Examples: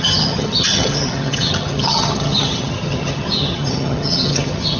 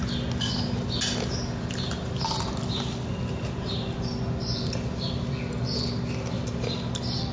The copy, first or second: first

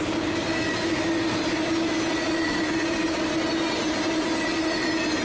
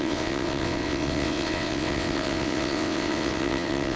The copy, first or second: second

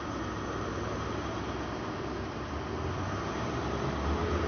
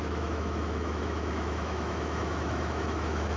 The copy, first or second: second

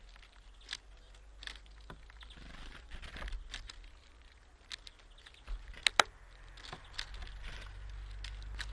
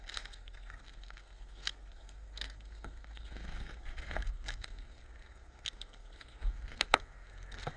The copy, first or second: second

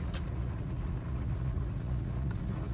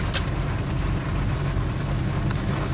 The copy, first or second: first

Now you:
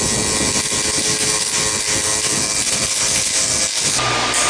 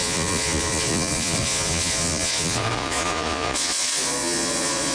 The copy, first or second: second